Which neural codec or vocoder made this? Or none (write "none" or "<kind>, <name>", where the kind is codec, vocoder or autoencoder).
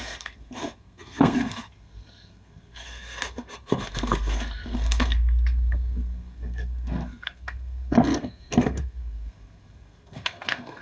codec, SNAC